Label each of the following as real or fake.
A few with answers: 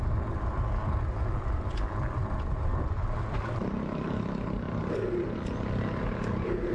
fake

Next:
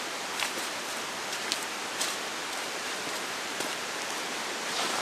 fake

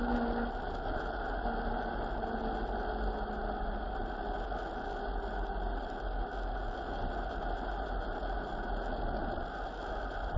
real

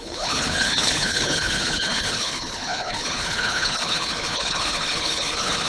fake